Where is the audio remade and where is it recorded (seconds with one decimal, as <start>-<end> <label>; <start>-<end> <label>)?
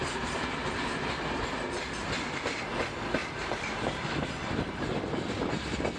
0.0-2.0 recorded; 2.0-2.5 remade; 2.5-3.2 recorded; 3.2-4.9 remade; 4.9-6.0 recorded